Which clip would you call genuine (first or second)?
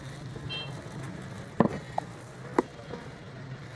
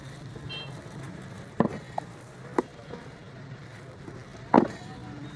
first